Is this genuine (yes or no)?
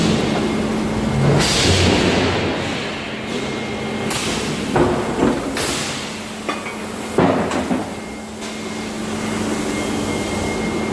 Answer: yes